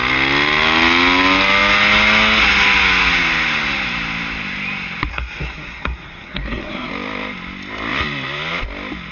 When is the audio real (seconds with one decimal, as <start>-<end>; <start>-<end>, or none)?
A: 0.0-5.1; 6.9-9.1